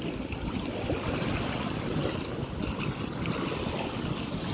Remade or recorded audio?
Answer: recorded